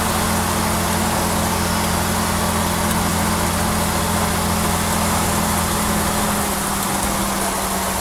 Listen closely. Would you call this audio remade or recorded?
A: recorded